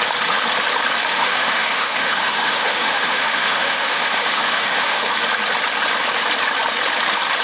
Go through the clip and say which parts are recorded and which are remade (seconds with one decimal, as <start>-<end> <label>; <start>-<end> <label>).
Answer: 0.0-1.1 recorded; 1.1-5.0 remade; 5.0-7.4 recorded